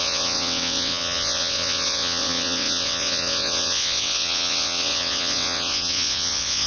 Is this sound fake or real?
fake